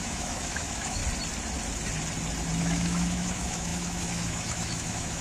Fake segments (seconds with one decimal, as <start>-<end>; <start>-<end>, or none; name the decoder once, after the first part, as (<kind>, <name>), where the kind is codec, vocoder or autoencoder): 0.0-1.0 (autoencoder, DAC-VAE); 2.6-5.2